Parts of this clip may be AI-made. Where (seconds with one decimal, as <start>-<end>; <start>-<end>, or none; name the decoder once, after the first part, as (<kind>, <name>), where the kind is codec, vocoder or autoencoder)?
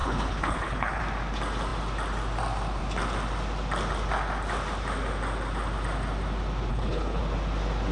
0.0-1.0 (codec, HILCodec); 6.7-7.2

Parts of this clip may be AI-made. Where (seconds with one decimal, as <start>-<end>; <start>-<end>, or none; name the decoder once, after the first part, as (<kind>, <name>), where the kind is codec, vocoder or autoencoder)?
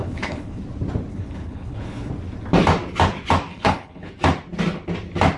0.0-0.6 (codec, HILCodec); 1.1-2.1; 3.5-4.1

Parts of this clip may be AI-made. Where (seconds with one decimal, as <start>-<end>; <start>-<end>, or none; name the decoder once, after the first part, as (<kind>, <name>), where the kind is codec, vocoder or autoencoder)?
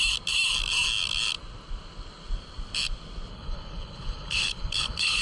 3.3-5.2 (codec, HILCodec)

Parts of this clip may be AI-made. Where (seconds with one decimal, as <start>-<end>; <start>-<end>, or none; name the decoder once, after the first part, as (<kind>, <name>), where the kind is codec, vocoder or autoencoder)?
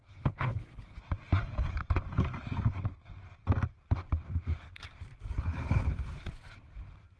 0.0-1.0 (codec, HILCodec)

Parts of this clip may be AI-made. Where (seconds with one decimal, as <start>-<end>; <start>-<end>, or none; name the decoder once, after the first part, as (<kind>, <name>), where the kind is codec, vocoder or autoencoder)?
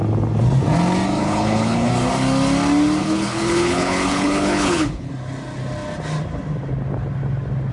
1.2-1.9 (codec, HILCodec); 3.0-5.1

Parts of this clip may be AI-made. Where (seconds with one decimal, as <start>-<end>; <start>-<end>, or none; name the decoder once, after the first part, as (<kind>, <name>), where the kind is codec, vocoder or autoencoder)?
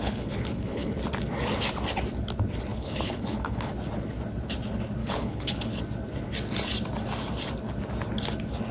0.0-0.9 (codec, HILCodec); 2.7-3.7; 5.0-5.8